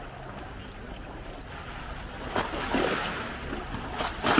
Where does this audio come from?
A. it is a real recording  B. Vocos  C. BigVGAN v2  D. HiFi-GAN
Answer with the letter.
A